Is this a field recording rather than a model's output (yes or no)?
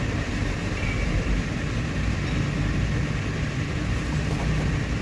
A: no